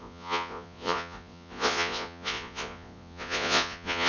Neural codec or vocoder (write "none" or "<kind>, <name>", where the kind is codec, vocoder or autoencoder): vocoder, Vocos